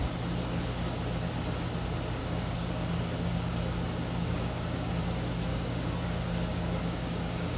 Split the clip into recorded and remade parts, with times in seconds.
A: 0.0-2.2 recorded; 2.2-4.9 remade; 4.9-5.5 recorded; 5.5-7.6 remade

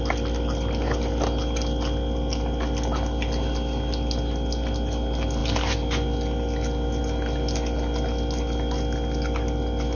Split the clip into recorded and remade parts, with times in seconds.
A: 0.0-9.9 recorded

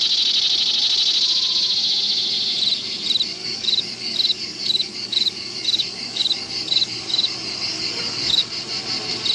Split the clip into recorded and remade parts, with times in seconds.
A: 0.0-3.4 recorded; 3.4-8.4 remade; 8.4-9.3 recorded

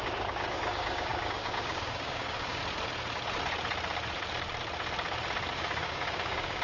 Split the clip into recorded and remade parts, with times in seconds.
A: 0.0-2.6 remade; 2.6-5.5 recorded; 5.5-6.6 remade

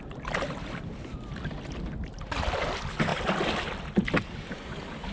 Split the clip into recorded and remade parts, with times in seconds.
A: 0.0-5.1 recorded

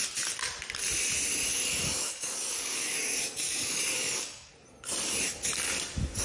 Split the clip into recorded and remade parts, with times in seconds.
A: 0.0-1.5 recorded; 1.5-4.5 remade; 4.5-6.2 recorded